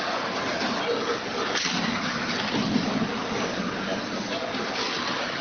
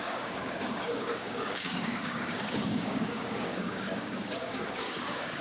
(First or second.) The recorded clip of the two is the first